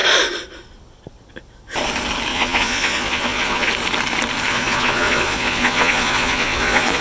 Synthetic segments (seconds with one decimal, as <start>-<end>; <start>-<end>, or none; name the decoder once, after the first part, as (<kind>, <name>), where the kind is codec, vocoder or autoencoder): 2.3-3.7 (vocoder, Vocos); 4.5-7.0